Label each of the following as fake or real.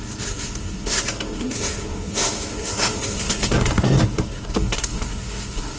fake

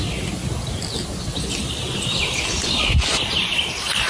real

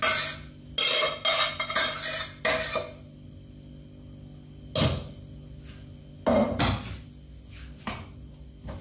real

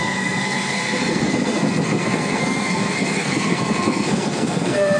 fake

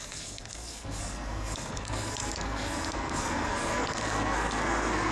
fake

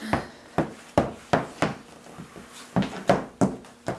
real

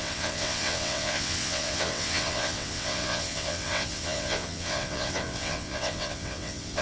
fake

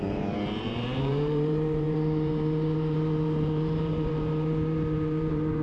fake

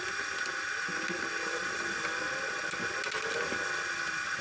real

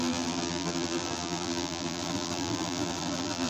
fake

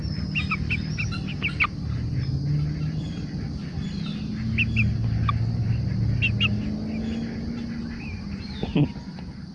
real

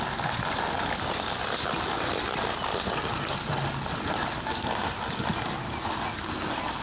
real